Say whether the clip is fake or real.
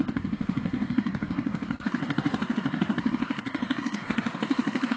fake